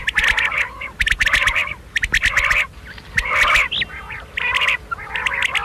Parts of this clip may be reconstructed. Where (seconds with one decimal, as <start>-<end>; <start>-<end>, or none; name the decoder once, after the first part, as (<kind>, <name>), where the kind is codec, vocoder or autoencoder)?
none